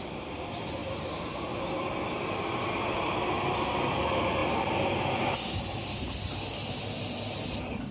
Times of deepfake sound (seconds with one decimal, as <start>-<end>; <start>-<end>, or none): 0.0-0.8; 3.9-4.4